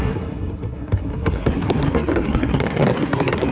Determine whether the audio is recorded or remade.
remade